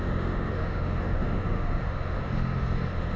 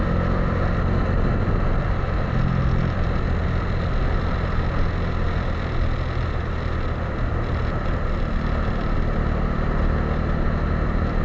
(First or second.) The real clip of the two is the second